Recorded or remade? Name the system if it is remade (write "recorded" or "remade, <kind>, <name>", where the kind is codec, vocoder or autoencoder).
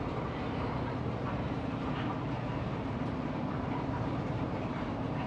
remade, vocoder, BigVGAN v2